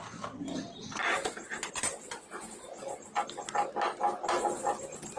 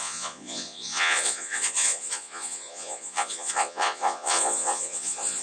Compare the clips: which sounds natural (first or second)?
first